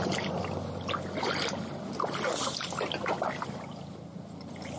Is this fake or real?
real